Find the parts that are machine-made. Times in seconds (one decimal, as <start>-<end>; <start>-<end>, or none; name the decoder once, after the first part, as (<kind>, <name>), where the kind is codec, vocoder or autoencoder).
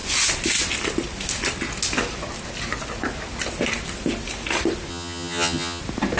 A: 4.9-5.8 (vocoder, HiFi-GAN)